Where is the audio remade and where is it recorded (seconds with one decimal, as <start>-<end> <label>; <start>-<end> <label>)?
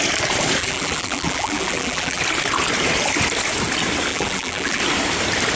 0.0-0.6 recorded; 0.6-2.2 remade; 2.2-4.1 recorded; 4.1-4.8 remade; 4.8-5.6 recorded